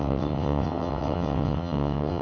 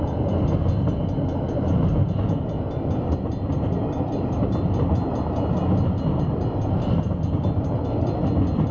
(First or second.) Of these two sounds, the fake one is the first